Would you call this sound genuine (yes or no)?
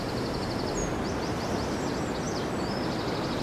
yes